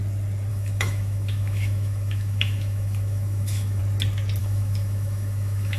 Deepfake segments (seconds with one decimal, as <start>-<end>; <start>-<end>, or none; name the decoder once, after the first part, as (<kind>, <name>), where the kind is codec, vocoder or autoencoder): 0.5-3.8 (autoencoder, DAC-VAE); 4.4-5.8